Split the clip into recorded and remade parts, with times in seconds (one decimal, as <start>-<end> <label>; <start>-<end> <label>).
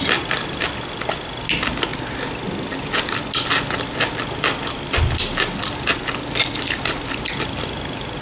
0.0-8.2 recorded